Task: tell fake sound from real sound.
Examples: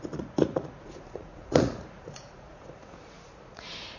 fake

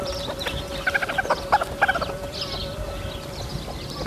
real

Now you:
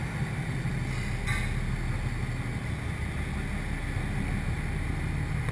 real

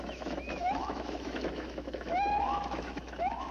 fake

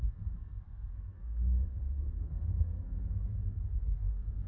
fake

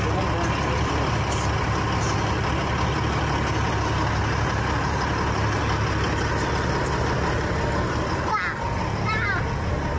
real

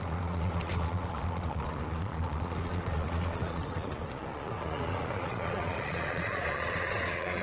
fake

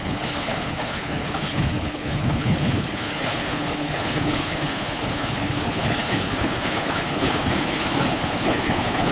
fake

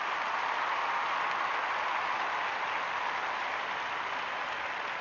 real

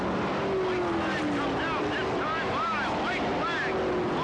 real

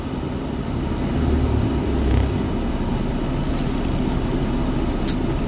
real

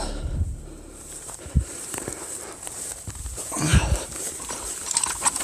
fake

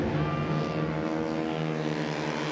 real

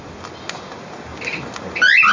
real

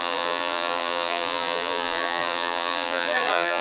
fake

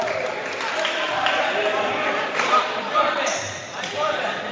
fake